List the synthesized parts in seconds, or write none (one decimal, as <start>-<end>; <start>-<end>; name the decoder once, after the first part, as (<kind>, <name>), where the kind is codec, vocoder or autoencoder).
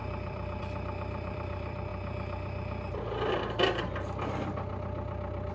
0.0-1.9 (vocoder, BigVGAN v2)